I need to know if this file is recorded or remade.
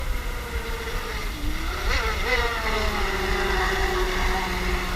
recorded